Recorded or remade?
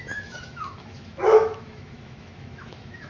remade